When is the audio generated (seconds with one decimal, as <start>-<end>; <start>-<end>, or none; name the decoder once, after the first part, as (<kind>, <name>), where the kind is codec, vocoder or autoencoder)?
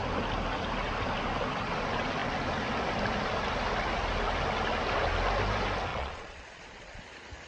5.9-7.0 (vocoder, Vocos)